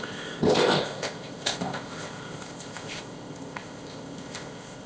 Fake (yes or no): yes